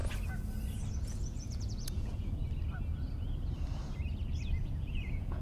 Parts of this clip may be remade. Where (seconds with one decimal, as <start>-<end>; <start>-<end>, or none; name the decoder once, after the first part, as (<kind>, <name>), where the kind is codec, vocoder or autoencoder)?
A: 0.9-2.4 (vocoder, Vocos); 4.6-5.4